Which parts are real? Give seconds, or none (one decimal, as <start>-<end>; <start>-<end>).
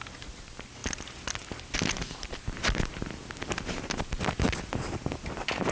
0.0-5.7